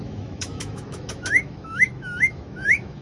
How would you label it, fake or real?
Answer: fake